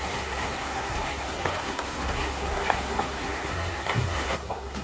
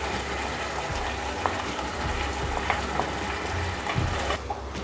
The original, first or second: second